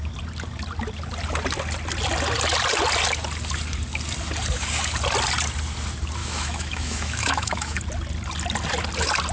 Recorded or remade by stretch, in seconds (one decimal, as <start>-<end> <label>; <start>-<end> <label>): 0.0-6.2 recorded; 6.2-7.8 remade; 7.8-9.3 recorded